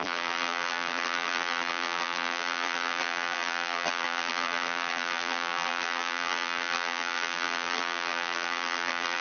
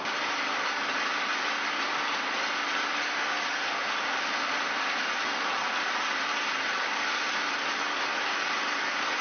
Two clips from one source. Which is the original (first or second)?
second